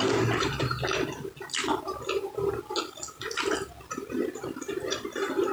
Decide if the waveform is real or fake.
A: real